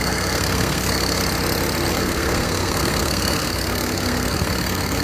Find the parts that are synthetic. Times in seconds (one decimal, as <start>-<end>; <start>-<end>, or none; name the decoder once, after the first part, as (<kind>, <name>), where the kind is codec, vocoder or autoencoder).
0.0-1.2 (codec, SNAC); 1.9-5.0